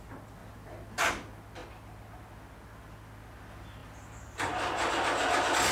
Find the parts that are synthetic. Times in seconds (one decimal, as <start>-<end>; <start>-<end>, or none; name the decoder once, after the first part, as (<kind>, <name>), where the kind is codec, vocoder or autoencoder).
0.4-1.1 (vocoder, BigVGAN v2); 3.8-4.9